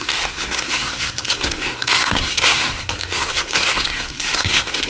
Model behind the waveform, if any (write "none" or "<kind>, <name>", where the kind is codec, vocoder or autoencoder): codec, SNAC